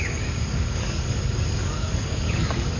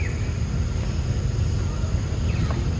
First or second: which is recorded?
second